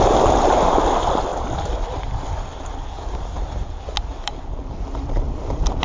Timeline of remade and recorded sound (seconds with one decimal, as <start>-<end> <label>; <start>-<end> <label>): 0.0-5.8 recorded